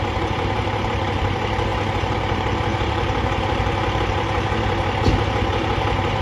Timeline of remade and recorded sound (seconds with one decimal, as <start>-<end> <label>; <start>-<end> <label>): 0.0-6.2 remade